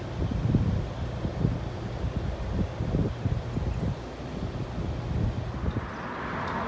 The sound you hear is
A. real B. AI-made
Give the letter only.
A